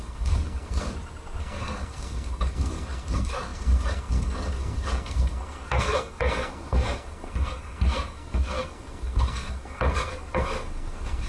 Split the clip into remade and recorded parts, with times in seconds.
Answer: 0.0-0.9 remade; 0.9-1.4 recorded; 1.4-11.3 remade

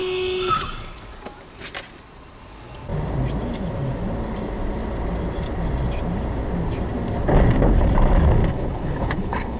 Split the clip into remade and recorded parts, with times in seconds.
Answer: 0.0-8.4 recorded; 8.4-9.6 remade

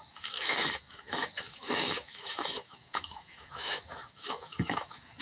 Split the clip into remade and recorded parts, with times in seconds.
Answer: 0.0-5.2 remade

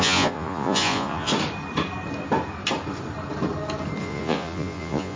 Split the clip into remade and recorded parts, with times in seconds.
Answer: 0.0-1.3 remade; 1.3-4.0 recorded; 4.0-5.2 remade

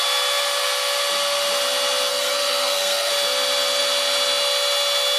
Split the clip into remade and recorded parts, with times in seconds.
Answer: 0.0-2.1 recorded; 2.1-3.1 remade; 3.1-5.2 recorded

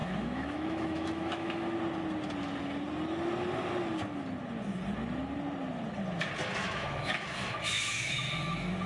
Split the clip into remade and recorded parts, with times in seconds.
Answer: 0.0-1.8 remade; 1.8-6.6 recorded; 6.6-8.3 remade; 8.3-8.9 recorded

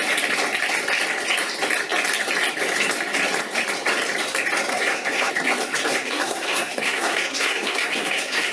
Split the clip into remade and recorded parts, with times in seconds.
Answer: 0.0-4.7 recorded; 4.7-5.3 remade; 5.3-5.9 recorded; 5.9-8.5 remade